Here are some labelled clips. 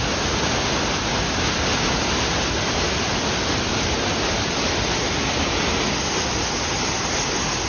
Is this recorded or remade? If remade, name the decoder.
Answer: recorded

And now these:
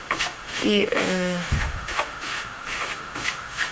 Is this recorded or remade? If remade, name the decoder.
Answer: remade, autoencoder, DAC-VAE